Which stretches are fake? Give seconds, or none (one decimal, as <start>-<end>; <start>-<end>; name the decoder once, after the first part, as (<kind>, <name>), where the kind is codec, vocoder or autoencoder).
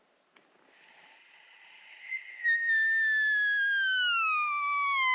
1.2-2.3 (vocoder, Vocos)